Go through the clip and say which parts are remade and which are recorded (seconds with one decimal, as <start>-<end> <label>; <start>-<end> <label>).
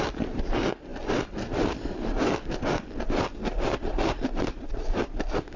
0.0-5.6 recorded